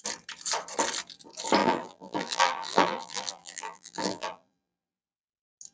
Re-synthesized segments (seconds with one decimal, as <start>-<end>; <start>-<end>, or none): 1.6-5.0